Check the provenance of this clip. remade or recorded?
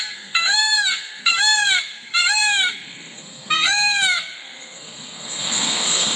remade